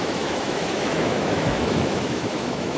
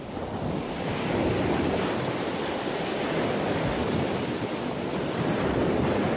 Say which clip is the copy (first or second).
first